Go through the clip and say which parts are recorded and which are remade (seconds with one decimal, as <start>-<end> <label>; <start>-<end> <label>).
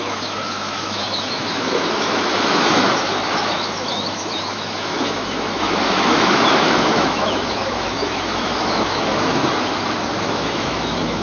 0.0-9.4 remade; 9.4-10.2 recorded; 10.2-11.2 remade